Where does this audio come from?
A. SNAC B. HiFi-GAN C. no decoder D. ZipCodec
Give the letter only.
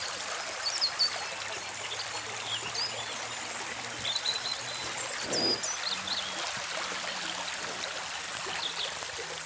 C